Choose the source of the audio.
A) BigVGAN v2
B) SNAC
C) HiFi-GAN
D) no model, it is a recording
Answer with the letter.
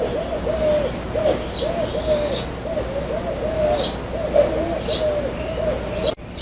D